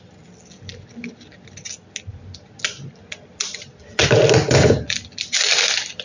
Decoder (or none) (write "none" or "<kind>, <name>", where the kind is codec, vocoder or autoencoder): none